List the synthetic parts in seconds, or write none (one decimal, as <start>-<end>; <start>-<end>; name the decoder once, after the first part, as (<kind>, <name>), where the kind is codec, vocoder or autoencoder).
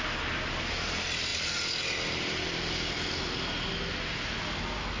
none